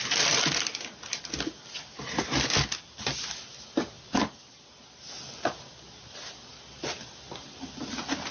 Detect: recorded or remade recorded